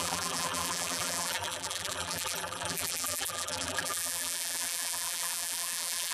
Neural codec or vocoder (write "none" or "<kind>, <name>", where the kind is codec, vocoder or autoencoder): vocoder, BigVGAN v2